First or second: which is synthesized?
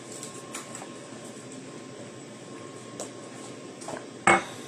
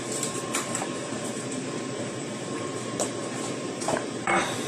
second